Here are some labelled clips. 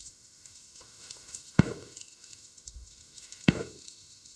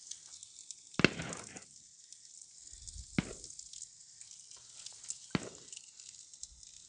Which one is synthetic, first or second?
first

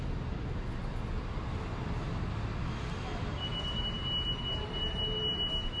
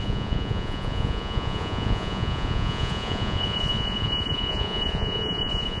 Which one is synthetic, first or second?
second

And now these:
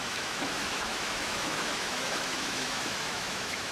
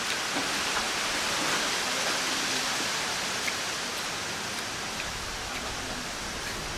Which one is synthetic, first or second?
first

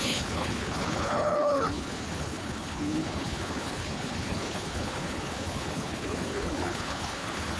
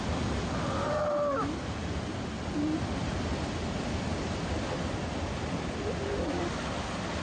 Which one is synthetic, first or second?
first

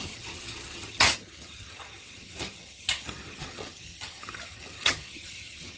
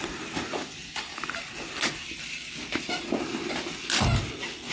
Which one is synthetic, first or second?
first